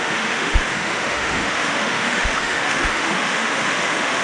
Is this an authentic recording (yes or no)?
no